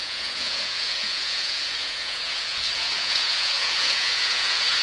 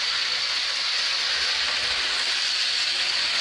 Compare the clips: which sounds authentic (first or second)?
second